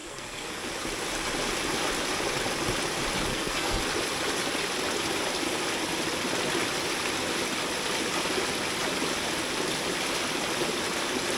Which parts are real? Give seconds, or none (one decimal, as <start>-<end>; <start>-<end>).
0.7-3.3; 3.8-11.4